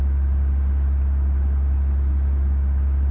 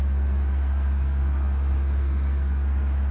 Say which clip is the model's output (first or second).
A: second